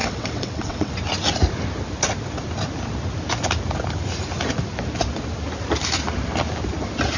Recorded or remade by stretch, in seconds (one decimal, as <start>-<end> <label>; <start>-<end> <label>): 0.0-0.9 remade; 0.9-7.2 recorded